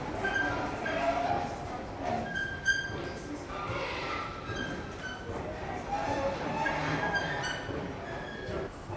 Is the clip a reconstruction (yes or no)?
no